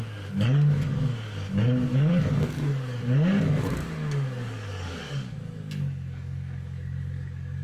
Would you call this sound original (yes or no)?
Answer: no